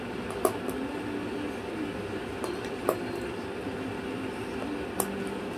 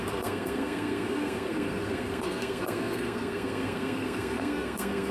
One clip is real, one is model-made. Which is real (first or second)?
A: first